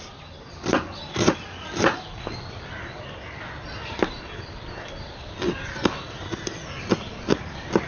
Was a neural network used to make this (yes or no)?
no